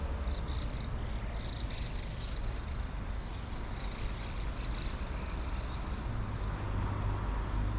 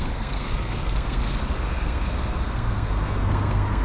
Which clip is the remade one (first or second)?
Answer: second